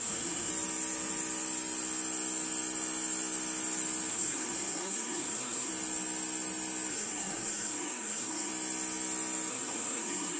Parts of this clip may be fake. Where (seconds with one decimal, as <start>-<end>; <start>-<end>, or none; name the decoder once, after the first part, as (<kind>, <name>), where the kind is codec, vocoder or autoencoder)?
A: 0.0-0.5 (codec, SNAC); 4.1-5.7; 6.9-8.5; 9.5-10.4